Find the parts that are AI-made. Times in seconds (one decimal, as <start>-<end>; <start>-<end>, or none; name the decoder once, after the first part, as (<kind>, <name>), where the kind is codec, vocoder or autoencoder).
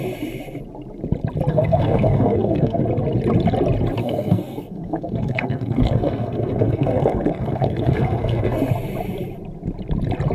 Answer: 1.5-2.8 (codec, SNAC); 4.0-8.6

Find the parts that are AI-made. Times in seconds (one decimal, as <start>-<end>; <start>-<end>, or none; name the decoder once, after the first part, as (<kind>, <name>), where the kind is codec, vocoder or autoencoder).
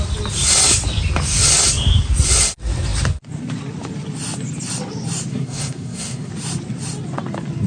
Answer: 5.3-6.3 (codec, SNAC)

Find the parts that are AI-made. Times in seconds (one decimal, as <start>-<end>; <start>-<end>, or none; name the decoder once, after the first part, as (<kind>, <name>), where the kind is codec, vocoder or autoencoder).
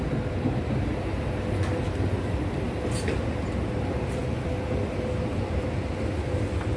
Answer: none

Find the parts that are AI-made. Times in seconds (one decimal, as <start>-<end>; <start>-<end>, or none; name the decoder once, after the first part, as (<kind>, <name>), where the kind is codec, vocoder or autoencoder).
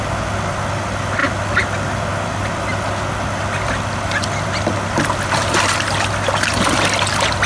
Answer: none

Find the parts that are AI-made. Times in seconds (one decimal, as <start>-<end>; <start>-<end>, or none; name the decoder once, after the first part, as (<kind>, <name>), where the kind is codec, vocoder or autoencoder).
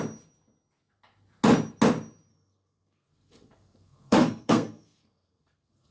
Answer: 2.3-5.9 (codec, SNAC)